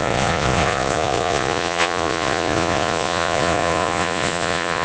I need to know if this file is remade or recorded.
remade